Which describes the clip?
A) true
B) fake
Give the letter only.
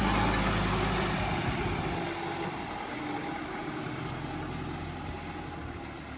A